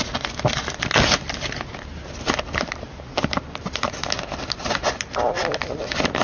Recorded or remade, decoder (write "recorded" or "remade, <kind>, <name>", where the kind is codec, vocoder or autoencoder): recorded